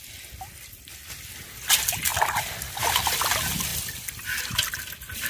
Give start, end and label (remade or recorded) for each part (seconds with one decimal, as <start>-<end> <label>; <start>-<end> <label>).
0.0-2.1 recorded; 2.1-2.8 remade; 2.8-5.3 recorded